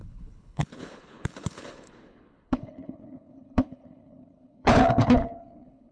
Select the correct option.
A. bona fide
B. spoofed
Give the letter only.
B